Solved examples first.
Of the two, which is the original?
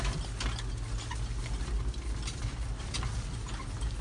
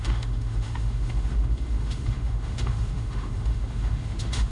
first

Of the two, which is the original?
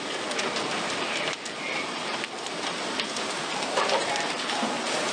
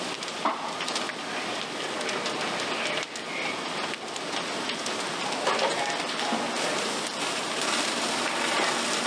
second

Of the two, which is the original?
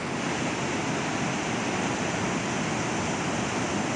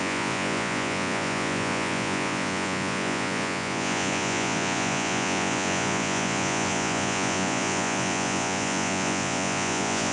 first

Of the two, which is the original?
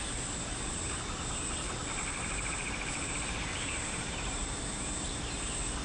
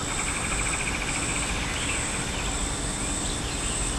second